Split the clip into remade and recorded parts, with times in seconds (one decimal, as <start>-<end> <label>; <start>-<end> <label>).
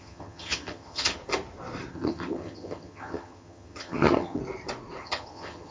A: 0.0-1.2 remade; 1.2-1.9 recorded; 1.9-4.4 remade; 4.4-5.0 recorded; 5.0-5.7 remade